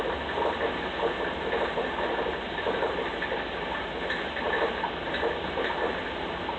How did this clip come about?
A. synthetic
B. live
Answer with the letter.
B